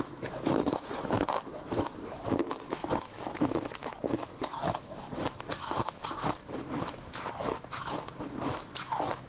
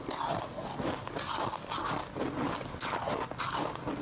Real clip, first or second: second